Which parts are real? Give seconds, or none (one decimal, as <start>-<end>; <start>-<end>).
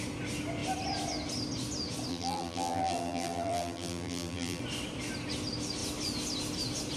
0.0-2.1; 4.6-7.0